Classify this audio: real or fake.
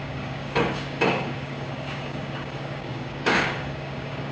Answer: fake